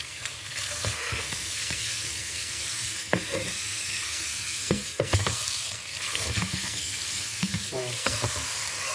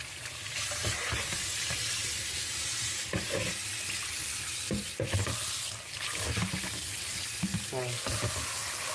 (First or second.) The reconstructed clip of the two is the first